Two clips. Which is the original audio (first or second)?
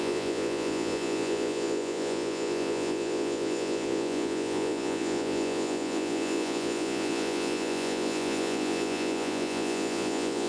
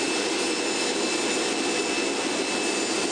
second